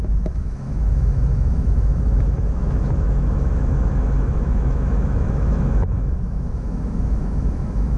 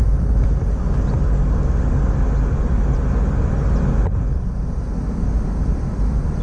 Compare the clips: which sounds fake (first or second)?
first